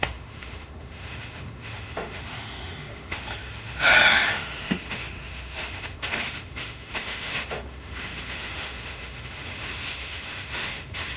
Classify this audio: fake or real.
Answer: fake